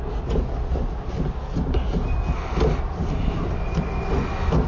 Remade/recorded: recorded